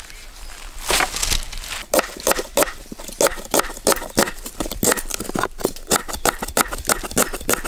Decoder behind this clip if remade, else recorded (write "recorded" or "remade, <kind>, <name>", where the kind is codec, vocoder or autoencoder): recorded